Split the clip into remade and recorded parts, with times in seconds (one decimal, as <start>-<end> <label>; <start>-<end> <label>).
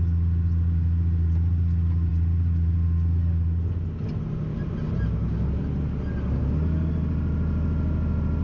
0.0-8.4 recorded